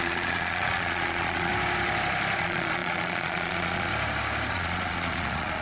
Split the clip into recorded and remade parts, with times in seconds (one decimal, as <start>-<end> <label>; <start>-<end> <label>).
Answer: 0.0-1.5 remade; 1.5-2.4 recorded; 2.4-3.9 remade; 3.9-4.5 recorded; 4.5-5.6 remade